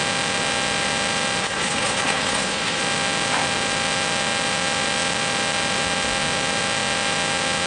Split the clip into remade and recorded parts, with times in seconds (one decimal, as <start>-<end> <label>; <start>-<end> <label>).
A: 0.0-1.4 recorded; 1.4-2.8 remade; 2.8-7.7 recorded